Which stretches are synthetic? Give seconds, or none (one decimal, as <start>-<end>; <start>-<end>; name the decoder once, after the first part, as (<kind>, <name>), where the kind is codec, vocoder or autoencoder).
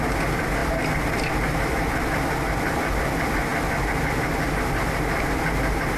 none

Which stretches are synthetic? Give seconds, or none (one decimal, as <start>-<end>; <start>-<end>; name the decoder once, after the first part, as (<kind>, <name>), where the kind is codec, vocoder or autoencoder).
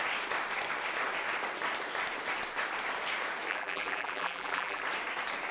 3.5-4.8 (vocoder, BigVGAN v2)